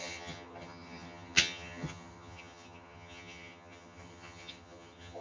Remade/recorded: remade